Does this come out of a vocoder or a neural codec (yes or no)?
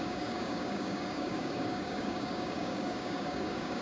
yes